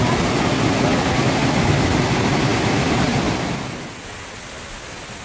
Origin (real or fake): real